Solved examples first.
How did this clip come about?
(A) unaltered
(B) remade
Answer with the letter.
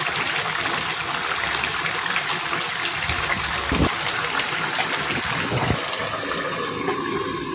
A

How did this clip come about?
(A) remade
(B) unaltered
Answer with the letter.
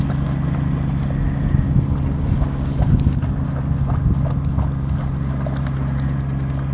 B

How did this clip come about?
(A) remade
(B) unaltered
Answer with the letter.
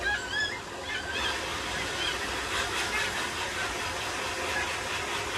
B